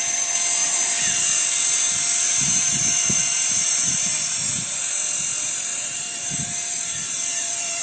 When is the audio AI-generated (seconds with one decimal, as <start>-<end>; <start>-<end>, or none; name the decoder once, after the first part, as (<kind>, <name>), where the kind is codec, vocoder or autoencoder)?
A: 0.6-1.2 (vocoder, BigVGAN v2); 2.4-4.8; 5.7-7.8